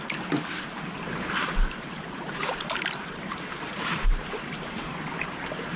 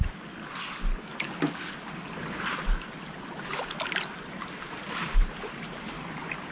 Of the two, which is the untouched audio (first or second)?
second